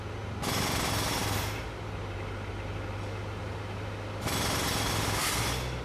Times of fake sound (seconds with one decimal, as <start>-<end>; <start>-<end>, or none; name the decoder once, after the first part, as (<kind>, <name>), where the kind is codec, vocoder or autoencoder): none